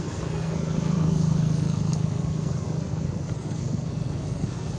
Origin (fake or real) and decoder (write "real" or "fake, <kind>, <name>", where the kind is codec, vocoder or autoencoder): fake, codec, SNAC